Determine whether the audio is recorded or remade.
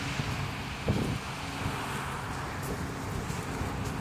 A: recorded